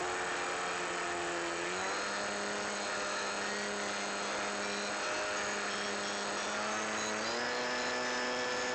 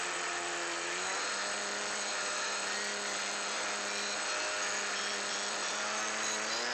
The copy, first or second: second